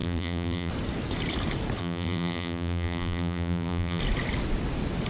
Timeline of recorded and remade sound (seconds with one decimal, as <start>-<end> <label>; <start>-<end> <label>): 0.0-0.7 remade; 0.7-1.8 recorded; 1.8-4.0 remade; 4.0-5.1 recorded